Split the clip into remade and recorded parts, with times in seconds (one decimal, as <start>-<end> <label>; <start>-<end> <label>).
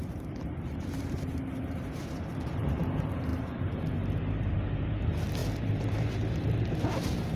0.0-7.4 remade